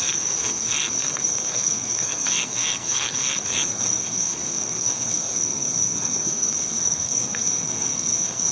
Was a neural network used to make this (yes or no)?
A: yes